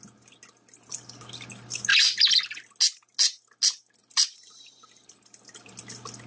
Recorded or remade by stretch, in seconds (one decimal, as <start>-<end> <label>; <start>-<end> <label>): 0.0-6.3 recorded